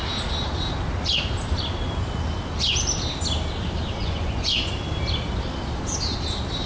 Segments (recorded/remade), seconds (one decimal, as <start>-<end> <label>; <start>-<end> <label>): 0.0-4.0 recorded; 4.0-4.7 remade; 4.7-6.7 recorded